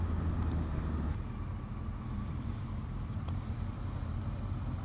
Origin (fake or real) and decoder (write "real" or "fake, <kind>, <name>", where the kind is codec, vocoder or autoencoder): real